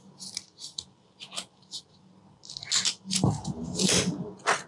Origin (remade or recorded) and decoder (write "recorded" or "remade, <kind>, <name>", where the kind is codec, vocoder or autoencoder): recorded